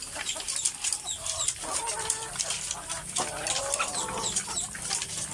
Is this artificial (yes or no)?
no